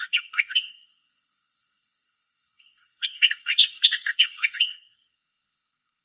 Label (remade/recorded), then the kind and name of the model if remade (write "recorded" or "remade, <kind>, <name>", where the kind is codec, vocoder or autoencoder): remade, codec, SNAC